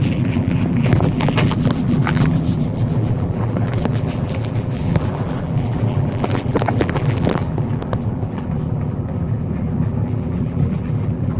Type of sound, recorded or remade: remade